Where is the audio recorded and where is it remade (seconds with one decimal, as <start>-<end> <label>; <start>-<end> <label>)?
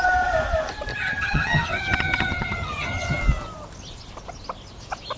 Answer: 0.0-0.9 recorded; 0.9-3.2 remade; 3.2-5.2 recorded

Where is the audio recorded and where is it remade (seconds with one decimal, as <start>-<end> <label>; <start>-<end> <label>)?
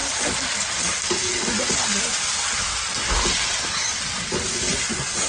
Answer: 0.0-2.0 recorded; 2.0-2.4 remade; 2.4-4.8 recorded; 4.8-5.3 remade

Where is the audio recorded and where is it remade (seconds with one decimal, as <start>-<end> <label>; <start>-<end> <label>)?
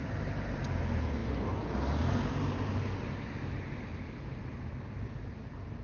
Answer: 0.0-5.8 recorded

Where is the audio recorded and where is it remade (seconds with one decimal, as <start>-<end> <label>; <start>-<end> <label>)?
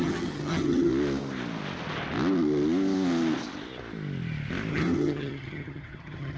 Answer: 0.0-0.9 remade; 0.9-4.7 recorded; 4.7-6.4 remade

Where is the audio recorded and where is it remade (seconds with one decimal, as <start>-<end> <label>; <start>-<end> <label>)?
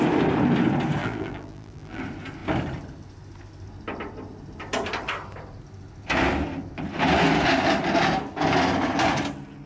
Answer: 0.0-1.0 recorded; 1.0-2.0 remade; 2.0-9.7 recorded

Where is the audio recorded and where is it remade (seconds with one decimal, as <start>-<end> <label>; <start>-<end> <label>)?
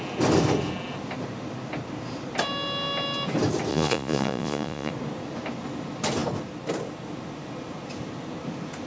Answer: 0.0-3.7 recorded; 3.7-4.9 remade; 4.9-8.9 recorded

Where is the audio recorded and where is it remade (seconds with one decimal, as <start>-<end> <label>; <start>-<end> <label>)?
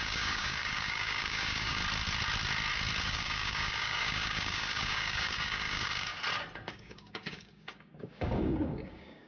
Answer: 0.0-1.8 remade; 1.8-3.0 recorded; 3.0-6.1 remade; 6.1-6.7 recorded; 6.7-9.3 remade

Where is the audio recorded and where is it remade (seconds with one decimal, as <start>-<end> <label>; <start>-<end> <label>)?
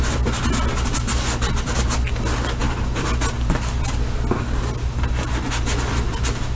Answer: 0.0-6.6 recorded